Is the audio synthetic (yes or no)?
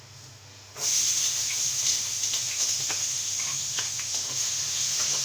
yes